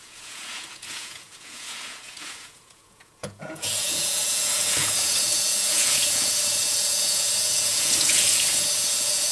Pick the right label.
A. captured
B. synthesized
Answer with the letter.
B